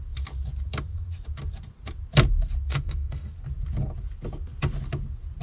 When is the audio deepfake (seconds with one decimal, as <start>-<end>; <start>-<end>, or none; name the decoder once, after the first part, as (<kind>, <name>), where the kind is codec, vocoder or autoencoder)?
2.7-3.3 (autoencoder, DAC-VAE)

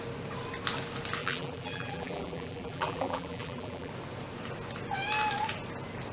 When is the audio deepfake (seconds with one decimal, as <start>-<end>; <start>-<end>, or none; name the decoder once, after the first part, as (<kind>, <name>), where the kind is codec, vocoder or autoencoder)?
1.2-3.9 (vocoder, BigVGAN v2)

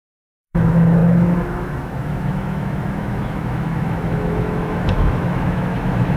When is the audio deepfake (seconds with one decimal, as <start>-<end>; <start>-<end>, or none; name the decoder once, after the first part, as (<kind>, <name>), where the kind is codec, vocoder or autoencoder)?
0.0-6.2 (autoencoder, DAC-VAE)

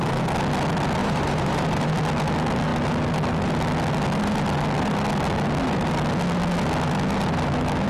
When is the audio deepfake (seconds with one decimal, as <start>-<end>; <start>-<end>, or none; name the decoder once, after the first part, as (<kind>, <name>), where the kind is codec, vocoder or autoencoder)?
1.0-1.9 (vocoder, BigVGAN v2)

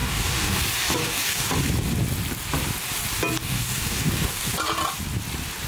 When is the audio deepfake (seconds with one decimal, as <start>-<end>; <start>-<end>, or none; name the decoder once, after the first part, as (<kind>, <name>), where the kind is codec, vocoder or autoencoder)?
0.0-0.6 (codec, DAC); 1.0-1.5; 3.4-4.5